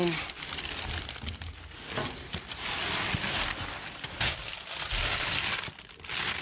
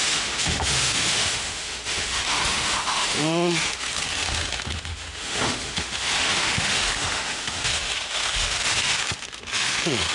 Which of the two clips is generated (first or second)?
second